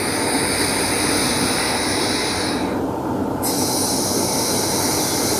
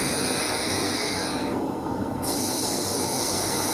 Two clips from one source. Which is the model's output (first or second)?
second